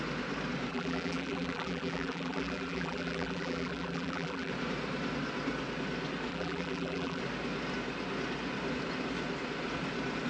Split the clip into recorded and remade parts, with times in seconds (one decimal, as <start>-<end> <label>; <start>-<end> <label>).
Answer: 0.0-0.7 recorded; 0.7-4.5 remade; 4.5-6.3 recorded; 6.3-7.2 remade; 7.2-10.3 recorded

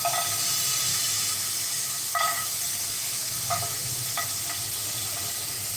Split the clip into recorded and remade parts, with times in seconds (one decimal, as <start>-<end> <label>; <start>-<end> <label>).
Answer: 0.0-0.9 recorded; 0.9-4.4 remade; 4.4-5.8 recorded

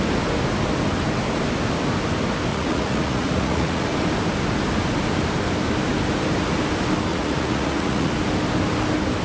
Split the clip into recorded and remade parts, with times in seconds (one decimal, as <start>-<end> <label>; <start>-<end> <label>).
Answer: 0.0-2.5 recorded; 2.5-3.9 remade; 3.9-7.1 recorded; 7.1-8.1 remade; 8.1-9.2 recorded

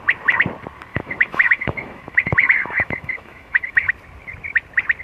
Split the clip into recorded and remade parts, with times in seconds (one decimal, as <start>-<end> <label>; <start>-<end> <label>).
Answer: 0.0-0.9 recorded; 0.9-3.9 remade; 3.9-5.0 recorded